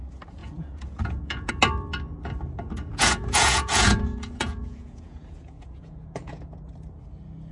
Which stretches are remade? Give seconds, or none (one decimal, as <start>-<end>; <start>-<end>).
0.4-1.5; 2.9-6.7